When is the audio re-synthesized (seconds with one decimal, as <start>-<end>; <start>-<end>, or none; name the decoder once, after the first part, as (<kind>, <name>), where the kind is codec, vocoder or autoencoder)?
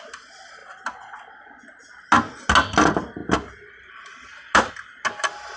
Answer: none